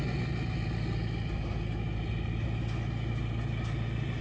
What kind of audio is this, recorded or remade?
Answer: recorded